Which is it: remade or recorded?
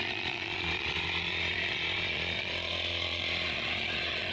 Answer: remade